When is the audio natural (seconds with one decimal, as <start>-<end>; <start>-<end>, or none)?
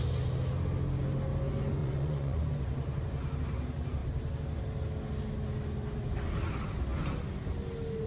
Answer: 0.0-1.8; 2.4-8.1